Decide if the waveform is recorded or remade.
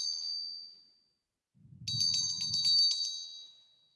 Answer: recorded